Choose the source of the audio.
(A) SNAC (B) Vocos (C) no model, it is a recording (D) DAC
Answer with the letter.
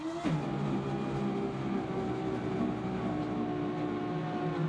C